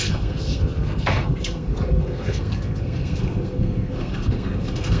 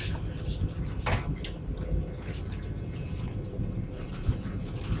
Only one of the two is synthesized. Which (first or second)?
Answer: first